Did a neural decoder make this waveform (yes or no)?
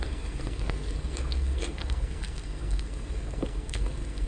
yes